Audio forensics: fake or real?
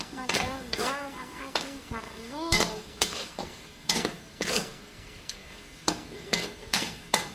fake